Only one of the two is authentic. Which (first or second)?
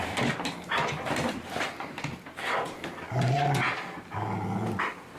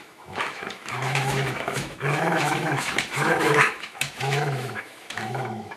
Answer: first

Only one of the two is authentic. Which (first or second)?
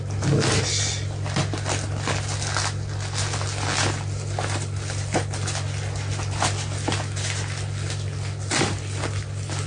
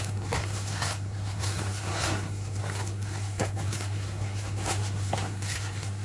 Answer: first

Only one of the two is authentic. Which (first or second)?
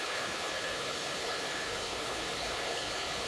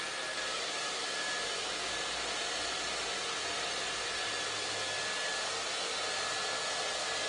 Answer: second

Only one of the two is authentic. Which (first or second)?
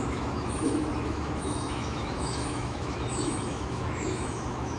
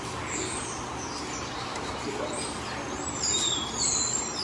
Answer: second